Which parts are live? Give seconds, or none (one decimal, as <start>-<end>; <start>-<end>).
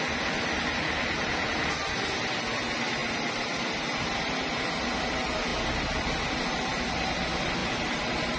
0.0-7.6